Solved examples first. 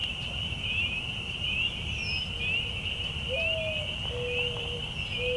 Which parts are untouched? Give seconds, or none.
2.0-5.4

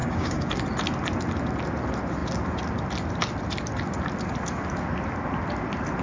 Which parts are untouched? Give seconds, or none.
0.5-6.0

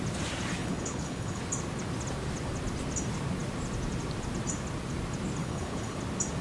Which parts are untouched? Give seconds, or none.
0.0-0.6; 1.4-5.4; 6.0-6.4

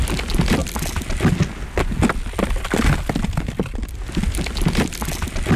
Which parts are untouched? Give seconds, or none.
0.0-5.6